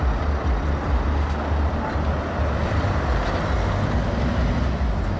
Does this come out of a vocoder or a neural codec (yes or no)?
no